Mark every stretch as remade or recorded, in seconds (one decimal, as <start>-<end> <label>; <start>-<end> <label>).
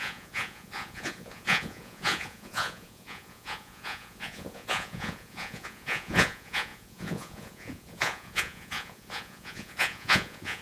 0.0-10.6 remade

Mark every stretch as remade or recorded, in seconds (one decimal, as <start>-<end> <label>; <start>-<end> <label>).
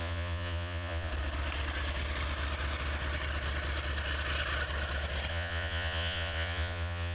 0.0-1.1 remade; 1.1-5.3 recorded; 5.3-7.1 remade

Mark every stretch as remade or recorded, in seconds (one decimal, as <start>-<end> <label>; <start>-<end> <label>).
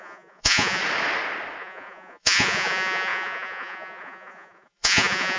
0.0-0.8 remade; 0.8-1.6 recorded; 1.6-5.4 remade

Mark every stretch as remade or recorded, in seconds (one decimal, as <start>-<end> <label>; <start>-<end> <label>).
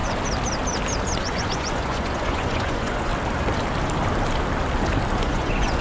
0.0-1.2 recorded; 1.2-3.1 remade; 3.1-5.2 recorded; 5.2-5.8 remade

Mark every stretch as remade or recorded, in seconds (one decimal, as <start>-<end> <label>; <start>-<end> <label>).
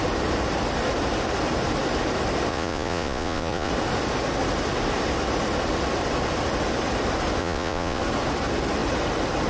0.0-2.5 recorded; 2.5-3.7 remade; 3.7-7.4 recorded; 7.4-8.0 remade; 8.0-9.5 recorded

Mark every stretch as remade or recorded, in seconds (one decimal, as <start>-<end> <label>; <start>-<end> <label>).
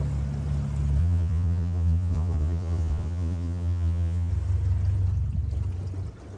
0.0-1.0 recorded; 1.0-4.3 remade; 4.3-6.4 recorded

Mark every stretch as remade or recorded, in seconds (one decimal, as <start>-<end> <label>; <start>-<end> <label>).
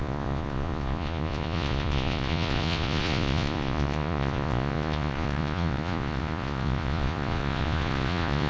0.0-8.5 remade